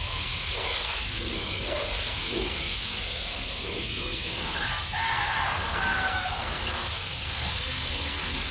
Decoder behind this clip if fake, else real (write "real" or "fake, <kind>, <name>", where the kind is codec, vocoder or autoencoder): fake, codec, SNAC